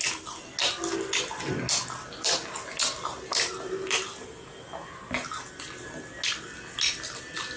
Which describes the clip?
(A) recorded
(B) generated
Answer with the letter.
A